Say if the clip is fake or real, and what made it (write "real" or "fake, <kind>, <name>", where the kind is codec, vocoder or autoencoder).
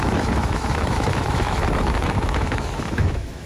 fake, autoencoder, DAC-VAE